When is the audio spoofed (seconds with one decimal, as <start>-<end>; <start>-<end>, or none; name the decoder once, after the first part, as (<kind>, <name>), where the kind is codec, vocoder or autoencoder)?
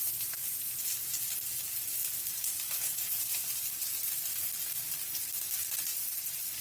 none